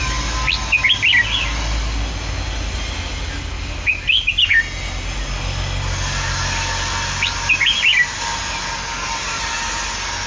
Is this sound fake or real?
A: real